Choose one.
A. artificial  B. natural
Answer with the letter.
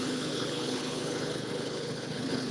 A